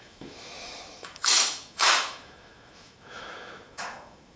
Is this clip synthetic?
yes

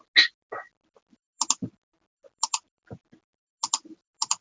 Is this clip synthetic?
no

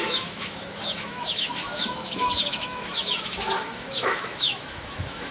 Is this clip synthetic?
yes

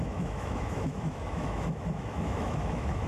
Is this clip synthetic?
yes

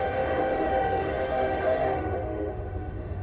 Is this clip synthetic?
yes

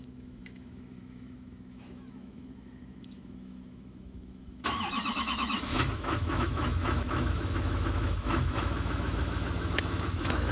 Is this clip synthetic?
yes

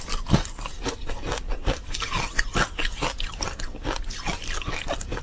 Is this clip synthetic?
no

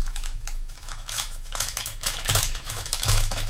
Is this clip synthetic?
yes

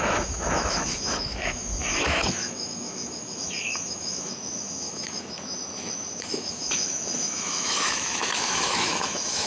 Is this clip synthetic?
yes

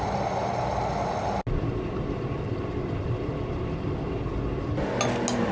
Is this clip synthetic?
no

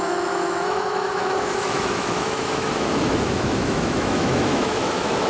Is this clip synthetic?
yes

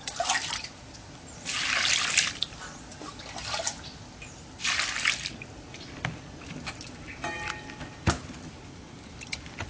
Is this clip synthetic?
no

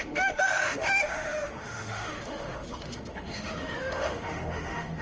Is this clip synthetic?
yes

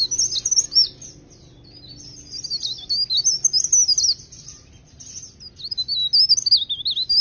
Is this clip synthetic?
no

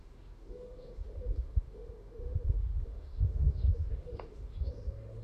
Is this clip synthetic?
yes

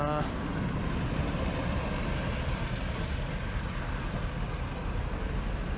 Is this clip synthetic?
no